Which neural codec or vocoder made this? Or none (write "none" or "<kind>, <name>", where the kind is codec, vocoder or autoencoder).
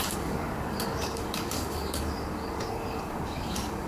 codec, DAC